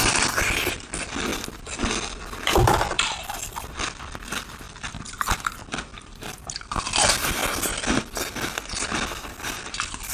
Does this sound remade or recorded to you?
remade